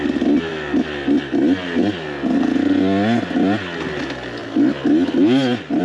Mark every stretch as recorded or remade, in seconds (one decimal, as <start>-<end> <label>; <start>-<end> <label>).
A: 0.0-5.8 recorded